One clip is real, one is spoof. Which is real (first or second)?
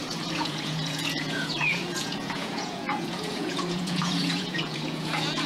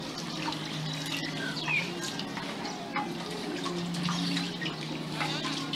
second